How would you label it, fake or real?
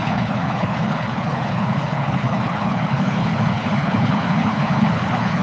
fake